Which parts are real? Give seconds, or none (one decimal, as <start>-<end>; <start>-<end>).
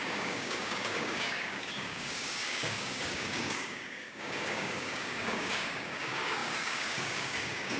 none